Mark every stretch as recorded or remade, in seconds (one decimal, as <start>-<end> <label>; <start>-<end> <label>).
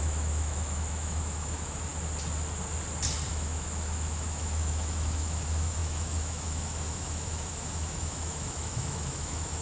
0.0-1.9 remade; 1.9-3.3 recorded; 3.3-9.6 remade